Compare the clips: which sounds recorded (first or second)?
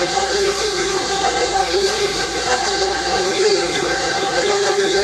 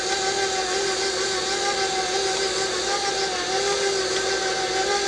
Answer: second